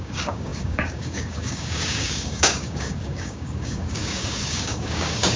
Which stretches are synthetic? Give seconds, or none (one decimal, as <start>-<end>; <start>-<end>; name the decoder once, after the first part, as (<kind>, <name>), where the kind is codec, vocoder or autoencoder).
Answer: 0.0-5.4 (codec, DAC)